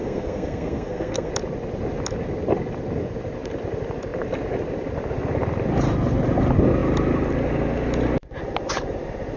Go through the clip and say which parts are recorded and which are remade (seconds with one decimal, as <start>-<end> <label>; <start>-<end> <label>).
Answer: 0.0-1.3 remade; 1.3-9.4 recorded